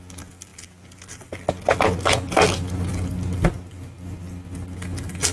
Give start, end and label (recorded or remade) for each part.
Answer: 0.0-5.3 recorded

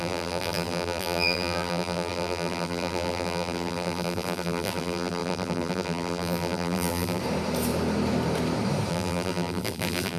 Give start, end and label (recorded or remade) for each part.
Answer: 0.0-7.2 remade; 7.2-8.9 recorded; 8.9-10.2 remade